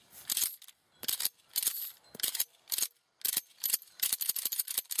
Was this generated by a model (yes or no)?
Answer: no